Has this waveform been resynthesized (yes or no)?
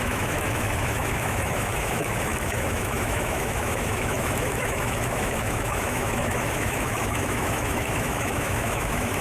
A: yes